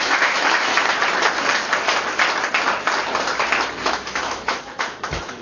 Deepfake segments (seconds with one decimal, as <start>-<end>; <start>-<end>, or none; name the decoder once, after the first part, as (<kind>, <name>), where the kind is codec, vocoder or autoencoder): 0.0-0.7 (autoencoder, DAC-VAE); 3.9-5.4